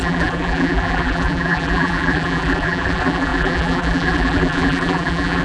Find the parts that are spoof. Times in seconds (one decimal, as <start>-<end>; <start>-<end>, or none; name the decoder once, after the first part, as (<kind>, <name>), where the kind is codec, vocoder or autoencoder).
0.0-5.4 (vocoder, BigVGAN v2)